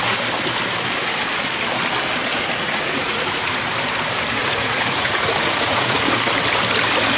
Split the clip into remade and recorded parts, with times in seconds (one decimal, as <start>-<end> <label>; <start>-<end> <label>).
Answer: 0.0-2.3 recorded; 2.3-3.5 remade; 3.5-4.4 recorded; 4.4-6.0 remade; 6.0-7.2 recorded